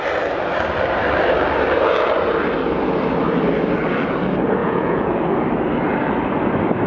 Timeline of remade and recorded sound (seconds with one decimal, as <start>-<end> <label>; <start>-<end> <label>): 0.0-4.6 recorded; 4.6-5.2 remade; 5.2-6.9 recorded

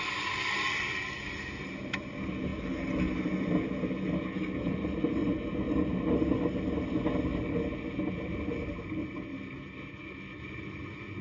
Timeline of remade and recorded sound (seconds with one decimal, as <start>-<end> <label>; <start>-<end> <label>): 0.0-11.2 recorded

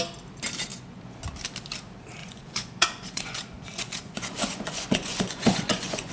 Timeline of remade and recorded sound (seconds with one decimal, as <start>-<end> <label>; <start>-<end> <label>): 0.0-0.7 recorded; 0.7-1.2 remade; 1.2-2.2 recorded; 2.2-6.1 remade

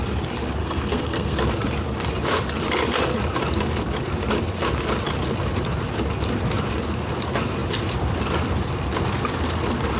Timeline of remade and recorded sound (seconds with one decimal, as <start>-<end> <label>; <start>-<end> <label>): 0.0-0.6 recorded; 0.6-1.4 remade; 1.4-10.0 recorded

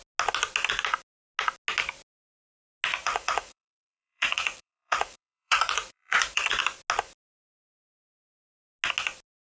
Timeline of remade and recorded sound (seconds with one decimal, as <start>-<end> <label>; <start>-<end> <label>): 0.0-2.9 recorded; 2.9-6.6 remade; 6.6-9.5 recorded

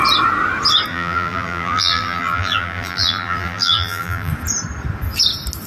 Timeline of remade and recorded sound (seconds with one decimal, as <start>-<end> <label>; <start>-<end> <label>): 0.0-0.9 recorded; 0.9-4.3 remade; 4.3-5.7 recorded

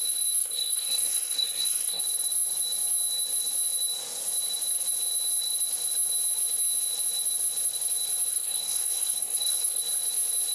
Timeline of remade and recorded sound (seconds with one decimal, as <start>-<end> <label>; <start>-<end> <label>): 0.0-0.4 recorded; 0.4-2.0 remade; 2.0-8.3 recorded; 8.3-9.8 remade; 9.8-10.5 recorded

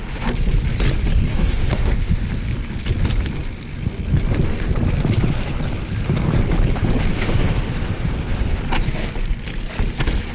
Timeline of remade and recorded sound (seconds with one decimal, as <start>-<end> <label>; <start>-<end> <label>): 0.0-1.3 recorded; 1.3-2.2 remade; 2.2-7.1 recorded; 7.1-8.6 remade; 8.6-10.3 recorded